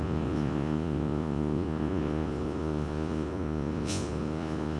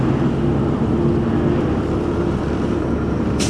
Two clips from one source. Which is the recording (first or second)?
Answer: second